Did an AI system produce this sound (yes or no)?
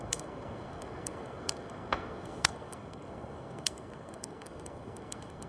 yes